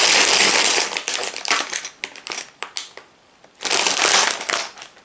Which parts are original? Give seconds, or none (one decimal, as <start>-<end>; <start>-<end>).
0.0-5.0